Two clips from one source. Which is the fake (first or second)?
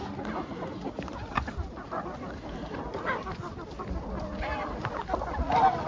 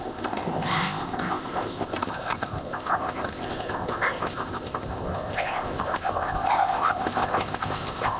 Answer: second